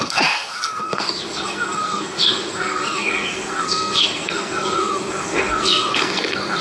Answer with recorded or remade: remade